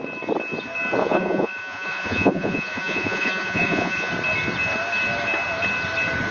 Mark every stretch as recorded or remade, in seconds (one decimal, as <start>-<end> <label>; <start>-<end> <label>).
0.0-1.0 recorded; 1.0-4.1 remade; 4.1-6.3 recorded